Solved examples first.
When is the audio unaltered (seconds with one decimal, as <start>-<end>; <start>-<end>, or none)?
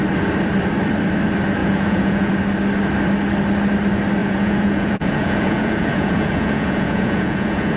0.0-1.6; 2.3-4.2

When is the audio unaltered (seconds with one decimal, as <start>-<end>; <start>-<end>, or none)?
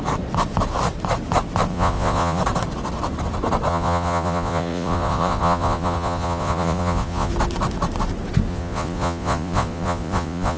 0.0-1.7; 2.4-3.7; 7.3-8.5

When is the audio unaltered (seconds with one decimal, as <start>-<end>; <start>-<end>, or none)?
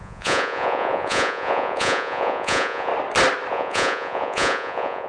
2.9-3.5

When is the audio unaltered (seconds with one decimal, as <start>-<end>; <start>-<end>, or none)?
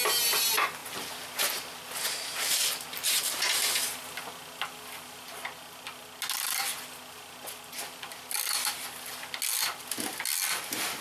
0.0-11.0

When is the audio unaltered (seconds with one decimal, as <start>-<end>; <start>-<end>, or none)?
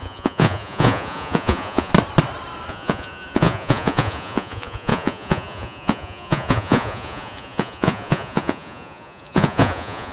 1.9-2.7